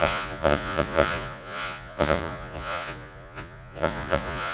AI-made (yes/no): yes